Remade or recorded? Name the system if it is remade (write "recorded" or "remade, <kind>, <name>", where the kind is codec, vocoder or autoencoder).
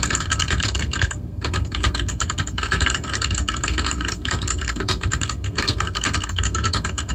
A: remade, codec, SNAC